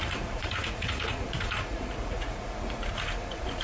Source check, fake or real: fake